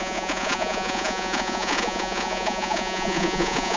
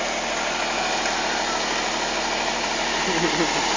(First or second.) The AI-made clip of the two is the first